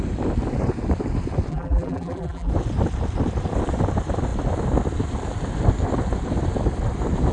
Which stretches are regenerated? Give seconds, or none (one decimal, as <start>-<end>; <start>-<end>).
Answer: 1.5-2.5

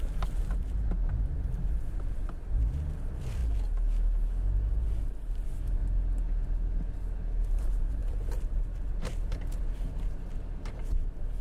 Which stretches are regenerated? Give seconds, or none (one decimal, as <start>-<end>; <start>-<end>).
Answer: 0.0-3.4; 4.7-5.8; 7.5-11.4

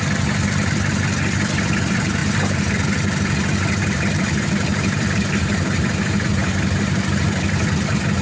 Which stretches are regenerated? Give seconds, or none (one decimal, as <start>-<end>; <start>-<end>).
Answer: 2.2-2.7; 3.8-6.0; 6.4-7.4